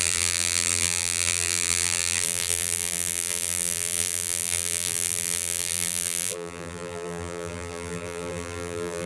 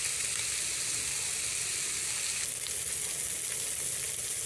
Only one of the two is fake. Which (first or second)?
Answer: first